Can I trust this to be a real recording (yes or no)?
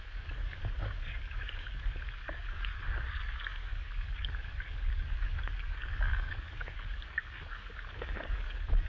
no